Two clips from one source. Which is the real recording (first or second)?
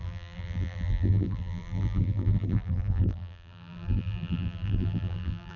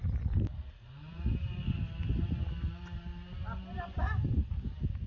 second